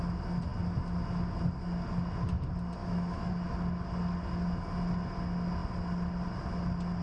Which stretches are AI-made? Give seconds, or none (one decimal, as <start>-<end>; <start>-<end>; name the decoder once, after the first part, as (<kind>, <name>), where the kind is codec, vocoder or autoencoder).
2.8-3.3 (autoencoder, DAC-VAE)